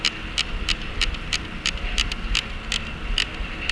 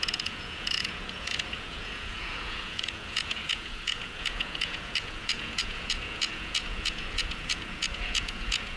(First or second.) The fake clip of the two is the second